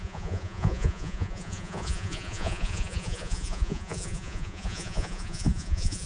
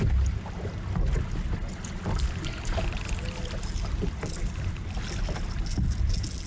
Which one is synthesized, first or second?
first